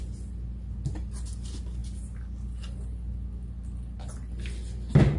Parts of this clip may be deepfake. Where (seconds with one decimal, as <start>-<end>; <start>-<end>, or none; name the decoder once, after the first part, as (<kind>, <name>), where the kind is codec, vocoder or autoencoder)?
none